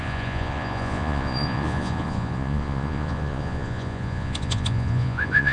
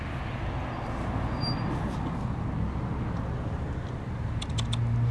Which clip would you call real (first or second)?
second